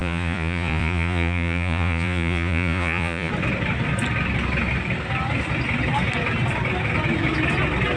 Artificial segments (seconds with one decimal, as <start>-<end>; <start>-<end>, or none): 0.0-3.3